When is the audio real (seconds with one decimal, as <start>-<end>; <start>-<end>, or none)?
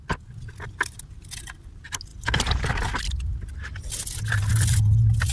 0.0-5.3